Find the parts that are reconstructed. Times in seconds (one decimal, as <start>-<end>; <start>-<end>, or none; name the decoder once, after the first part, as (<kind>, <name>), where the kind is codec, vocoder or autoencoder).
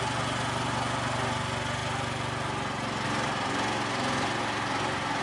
none